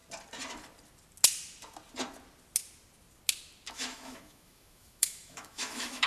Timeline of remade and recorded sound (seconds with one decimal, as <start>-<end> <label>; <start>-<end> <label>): 0.0-3.7 recorded; 3.7-6.1 remade